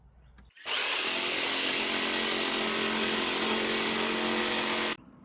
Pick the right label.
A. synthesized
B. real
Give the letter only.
B